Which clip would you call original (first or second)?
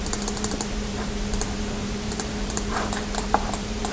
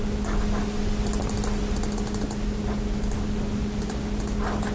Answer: second